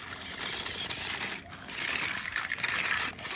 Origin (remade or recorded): recorded